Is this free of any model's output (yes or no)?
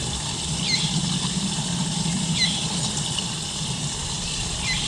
yes